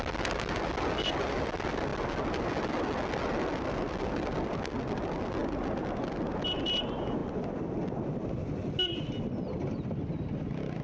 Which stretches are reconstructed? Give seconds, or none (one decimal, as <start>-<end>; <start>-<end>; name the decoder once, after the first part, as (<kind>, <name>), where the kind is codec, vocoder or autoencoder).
none